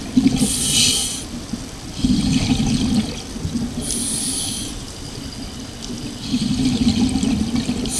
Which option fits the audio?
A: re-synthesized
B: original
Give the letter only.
B